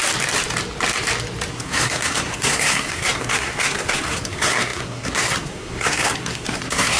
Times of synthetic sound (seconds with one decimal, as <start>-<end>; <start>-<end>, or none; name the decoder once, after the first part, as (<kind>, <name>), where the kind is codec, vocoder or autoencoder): 1.5-7.0 (codec, SNAC)